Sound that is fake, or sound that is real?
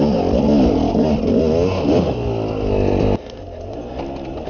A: real